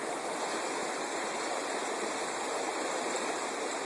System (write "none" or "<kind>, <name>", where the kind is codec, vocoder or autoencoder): none